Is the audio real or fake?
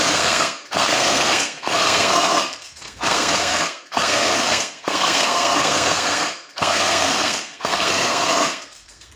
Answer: fake